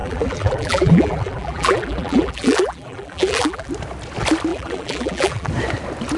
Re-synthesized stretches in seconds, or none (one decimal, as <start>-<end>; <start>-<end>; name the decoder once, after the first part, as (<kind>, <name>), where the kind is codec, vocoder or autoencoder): 0.0-3.7 (vocoder, BigVGAN v2); 4.5-5.5